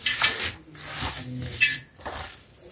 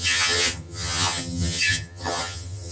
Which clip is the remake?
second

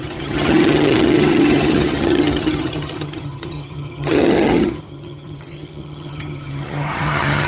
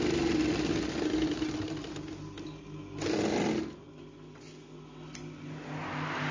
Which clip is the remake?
first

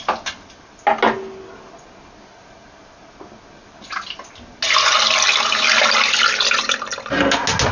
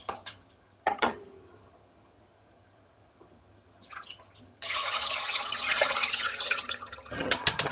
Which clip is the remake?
second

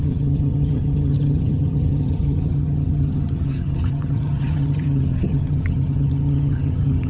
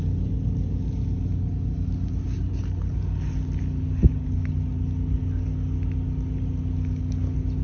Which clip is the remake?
first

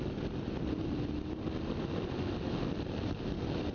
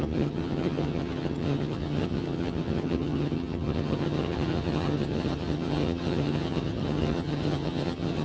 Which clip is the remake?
second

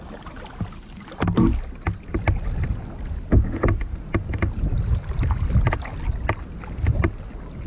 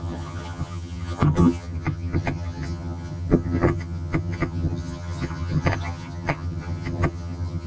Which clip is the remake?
second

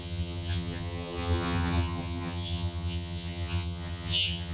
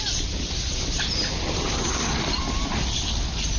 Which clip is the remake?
first